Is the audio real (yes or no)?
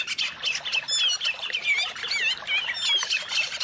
yes